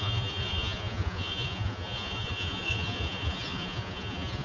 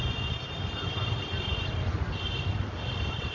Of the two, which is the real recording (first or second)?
second